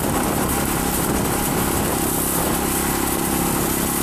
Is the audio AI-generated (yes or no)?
no